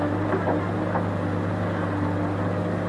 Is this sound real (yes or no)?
yes